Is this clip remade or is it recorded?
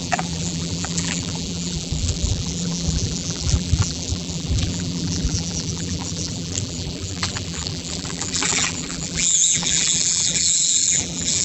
remade